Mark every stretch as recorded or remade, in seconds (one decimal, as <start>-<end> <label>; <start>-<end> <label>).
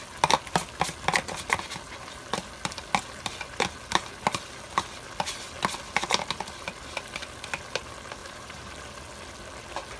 0.0-8.2 recorded; 8.2-8.7 remade; 8.7-10.0 recorded